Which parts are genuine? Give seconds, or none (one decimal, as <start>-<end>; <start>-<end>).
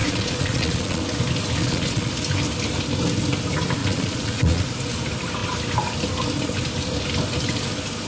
1.0-1.6; 2.1-3.8; 4.7-8.1